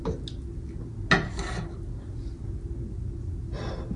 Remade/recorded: recorded